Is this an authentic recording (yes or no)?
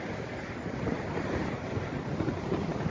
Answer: yes